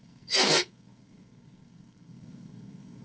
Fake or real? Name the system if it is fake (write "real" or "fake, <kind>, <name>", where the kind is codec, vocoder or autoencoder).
fake, codec, SNAC